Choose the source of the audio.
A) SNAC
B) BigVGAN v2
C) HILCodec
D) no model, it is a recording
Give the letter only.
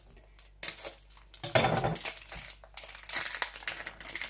D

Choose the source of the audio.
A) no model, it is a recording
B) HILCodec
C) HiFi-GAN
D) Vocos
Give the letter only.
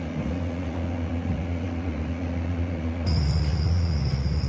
D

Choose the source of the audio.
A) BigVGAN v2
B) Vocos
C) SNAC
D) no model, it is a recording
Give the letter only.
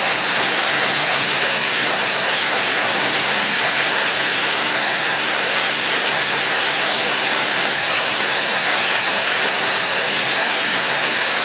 C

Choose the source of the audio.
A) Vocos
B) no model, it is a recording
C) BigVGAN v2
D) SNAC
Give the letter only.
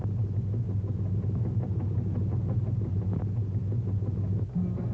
B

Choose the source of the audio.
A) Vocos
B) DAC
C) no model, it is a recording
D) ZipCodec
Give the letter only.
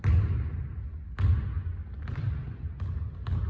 C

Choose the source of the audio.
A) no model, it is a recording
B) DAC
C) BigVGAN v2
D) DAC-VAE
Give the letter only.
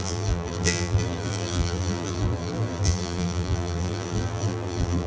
C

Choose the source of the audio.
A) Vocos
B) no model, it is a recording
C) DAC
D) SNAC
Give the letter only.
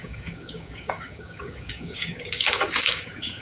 C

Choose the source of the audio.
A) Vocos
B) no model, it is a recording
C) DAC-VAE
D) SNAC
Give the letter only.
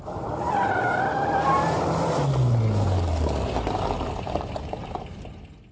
B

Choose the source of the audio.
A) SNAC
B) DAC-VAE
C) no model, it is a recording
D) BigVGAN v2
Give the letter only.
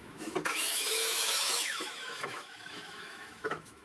B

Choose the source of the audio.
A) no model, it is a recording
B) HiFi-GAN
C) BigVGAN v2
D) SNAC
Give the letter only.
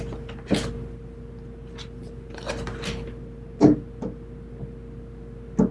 A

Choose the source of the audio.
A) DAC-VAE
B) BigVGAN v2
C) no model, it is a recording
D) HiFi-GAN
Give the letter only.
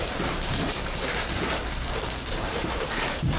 B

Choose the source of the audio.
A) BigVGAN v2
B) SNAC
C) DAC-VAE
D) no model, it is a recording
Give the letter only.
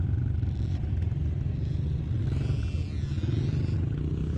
D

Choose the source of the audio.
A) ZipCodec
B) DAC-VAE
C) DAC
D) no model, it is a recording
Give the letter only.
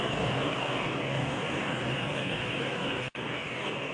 C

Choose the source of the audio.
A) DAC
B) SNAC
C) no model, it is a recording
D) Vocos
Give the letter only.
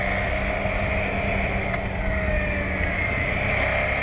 C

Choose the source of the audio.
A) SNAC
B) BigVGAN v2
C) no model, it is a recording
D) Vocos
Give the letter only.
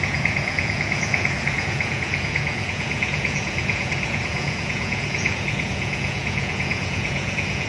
D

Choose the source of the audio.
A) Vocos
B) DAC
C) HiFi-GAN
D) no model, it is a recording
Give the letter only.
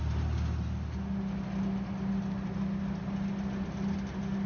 D